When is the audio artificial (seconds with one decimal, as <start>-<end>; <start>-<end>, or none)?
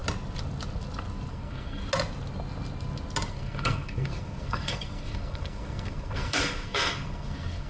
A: 1.3-1.8; 3.3-7.7